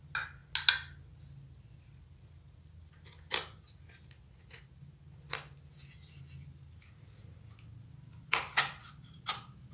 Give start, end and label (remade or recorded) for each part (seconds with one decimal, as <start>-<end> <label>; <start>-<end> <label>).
0.0-8.8 recorded; 8.8-9.7 remade